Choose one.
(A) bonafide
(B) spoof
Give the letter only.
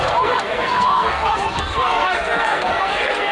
B